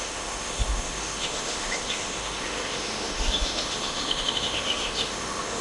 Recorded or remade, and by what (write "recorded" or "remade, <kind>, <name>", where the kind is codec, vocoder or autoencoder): remade, autoencoder, DAC-VAE